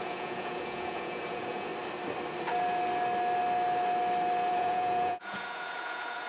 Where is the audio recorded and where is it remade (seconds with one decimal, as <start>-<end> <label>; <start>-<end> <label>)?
0.0-1.7 remade; 1.7-4.5 recorded; 4.5-6.3 remade